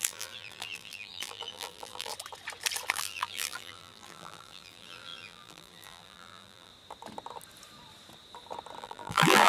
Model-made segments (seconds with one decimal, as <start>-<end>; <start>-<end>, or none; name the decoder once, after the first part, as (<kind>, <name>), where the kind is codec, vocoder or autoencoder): 0.0-2.1 (vocoder, BigVGAN v2); 2.9-6.7; 8.8-9.5